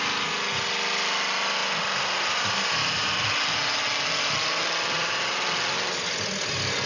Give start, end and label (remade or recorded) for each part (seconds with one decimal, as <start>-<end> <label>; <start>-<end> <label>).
0.0-6.9 recorded